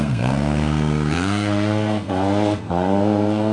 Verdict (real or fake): fake